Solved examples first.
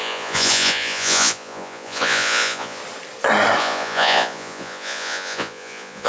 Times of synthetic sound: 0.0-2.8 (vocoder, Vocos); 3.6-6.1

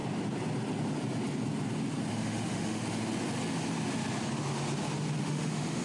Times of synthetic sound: 2.1-2.8 (autoencoder, DAC-VAE); 5.2-5.8